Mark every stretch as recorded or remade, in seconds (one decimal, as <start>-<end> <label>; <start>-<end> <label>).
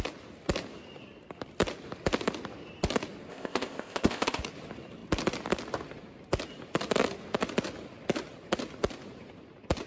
0.0-3.3 recorded; 3.3-4.4 remade; 4.4-9.9 recorded